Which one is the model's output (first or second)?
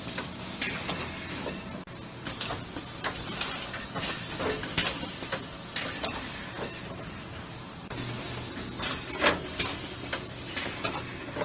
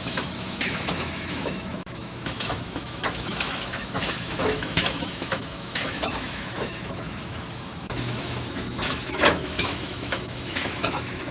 second